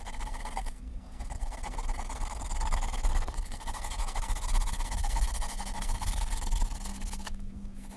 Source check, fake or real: fake